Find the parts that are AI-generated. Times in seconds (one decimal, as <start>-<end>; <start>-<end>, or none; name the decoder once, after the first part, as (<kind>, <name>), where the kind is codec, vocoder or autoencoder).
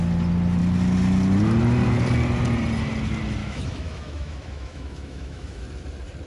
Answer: 3.4-5.6 (autoencoder, DAC-VAE)